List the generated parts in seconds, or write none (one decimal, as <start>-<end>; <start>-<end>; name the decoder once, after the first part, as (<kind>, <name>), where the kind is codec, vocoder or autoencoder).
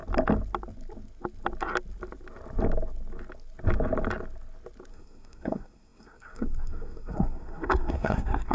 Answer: 4.9-8.5 (codec, SNAC)